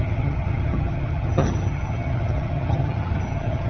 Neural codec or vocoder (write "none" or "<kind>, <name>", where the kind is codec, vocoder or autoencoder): vocoder, HiFi-GAN